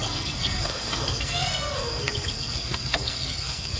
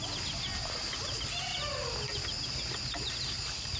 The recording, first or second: second